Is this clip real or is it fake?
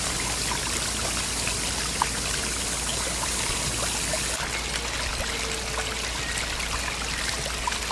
real